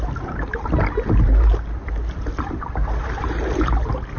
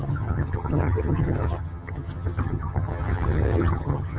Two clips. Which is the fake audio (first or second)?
second